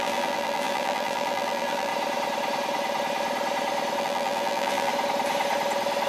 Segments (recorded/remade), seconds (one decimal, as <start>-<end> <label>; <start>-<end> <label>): 0.0-1.9 remade; 1.9-4.0 recorded; 4.0-4.9 remade; 4.9-6.1 recorded